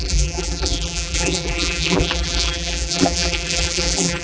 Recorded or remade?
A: remade